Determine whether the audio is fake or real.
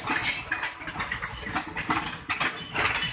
real